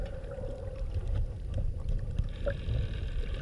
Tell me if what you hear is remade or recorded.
recorded